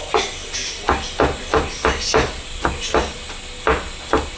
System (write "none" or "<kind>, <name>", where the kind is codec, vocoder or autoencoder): none